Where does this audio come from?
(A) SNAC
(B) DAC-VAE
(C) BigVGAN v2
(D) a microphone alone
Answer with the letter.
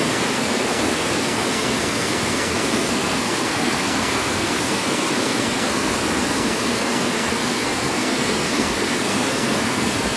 A